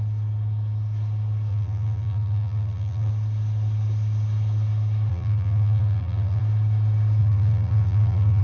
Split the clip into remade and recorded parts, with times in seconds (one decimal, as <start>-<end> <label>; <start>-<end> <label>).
0.0-1.5 recorded; 1.5-3.1 remade; 3.1-5.1 recorded; 5.1-6.4 remade; 6.4-7.2 recorded; 7.2-8.4 remade